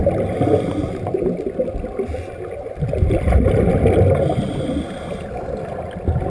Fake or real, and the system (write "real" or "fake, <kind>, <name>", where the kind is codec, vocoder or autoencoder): real